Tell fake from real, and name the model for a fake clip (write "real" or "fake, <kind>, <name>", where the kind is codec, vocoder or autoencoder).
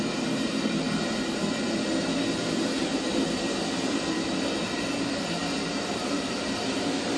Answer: fake, vocoder, BigVGAN v2